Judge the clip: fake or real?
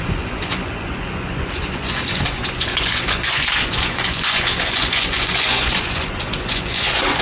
fake